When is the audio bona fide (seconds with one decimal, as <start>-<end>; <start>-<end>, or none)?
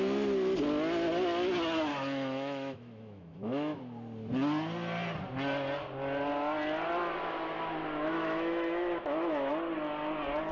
0.0-1.9; 3.8-8.1; 9.5-10.5